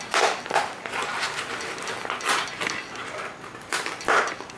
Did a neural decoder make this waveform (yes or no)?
no